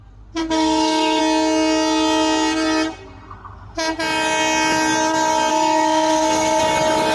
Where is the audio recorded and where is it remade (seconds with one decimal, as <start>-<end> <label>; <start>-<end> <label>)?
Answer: 0.0-0.4 recorded; 0.4-1.2 remade; 1.2-5.5 recorded; 5.5-6.6 remade; 6.6-7.1 recorded